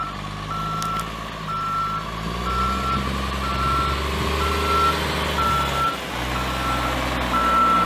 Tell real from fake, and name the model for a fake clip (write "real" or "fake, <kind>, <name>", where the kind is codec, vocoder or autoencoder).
real